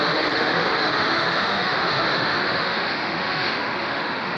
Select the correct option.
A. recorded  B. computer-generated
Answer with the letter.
B